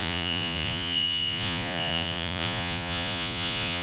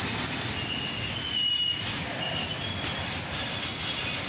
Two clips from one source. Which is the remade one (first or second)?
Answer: first